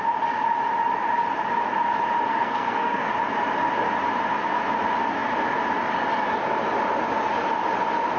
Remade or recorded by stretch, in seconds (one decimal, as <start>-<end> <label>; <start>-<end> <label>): 0.0-2.3 recorded; 2.3-3.1 remade; 3.1-8.2 recorded